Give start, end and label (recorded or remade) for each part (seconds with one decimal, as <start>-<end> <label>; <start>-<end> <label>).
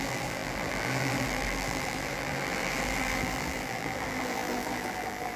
0.0-5.4 remade